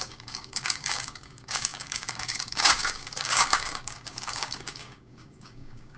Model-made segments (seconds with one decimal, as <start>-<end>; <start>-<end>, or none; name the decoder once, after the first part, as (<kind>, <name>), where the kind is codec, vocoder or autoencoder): 0.0-6.0 (codec, DAC)